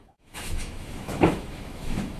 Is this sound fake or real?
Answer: fake